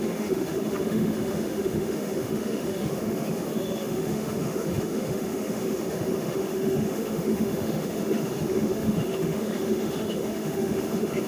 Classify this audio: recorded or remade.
remade